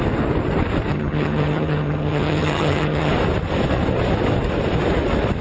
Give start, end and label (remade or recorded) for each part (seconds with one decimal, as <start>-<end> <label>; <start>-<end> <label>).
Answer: 0.0-0.9 recorded; 0.9-3.1 remade; 3.1-5.4 recorded